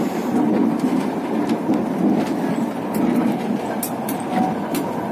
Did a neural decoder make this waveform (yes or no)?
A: no